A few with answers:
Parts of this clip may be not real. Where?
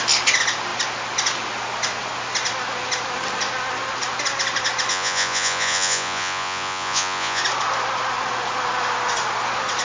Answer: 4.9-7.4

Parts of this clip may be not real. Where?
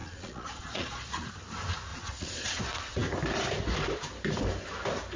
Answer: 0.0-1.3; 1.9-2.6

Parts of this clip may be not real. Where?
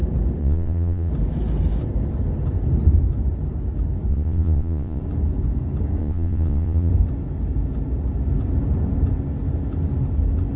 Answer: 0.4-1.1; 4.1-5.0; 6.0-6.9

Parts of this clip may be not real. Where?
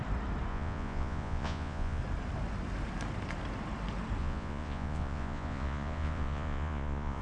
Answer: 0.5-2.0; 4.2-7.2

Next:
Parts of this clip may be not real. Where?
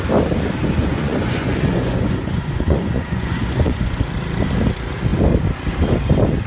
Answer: 0.8-4.0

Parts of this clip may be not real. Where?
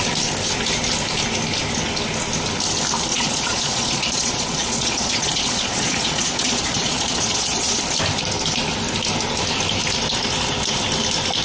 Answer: 3.1-7.8